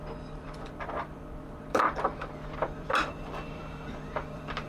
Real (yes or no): no